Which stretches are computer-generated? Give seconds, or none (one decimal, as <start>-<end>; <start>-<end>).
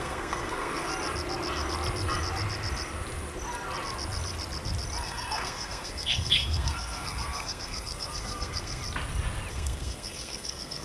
0.0-0.9; 5.0-8.8; 9.5-10.8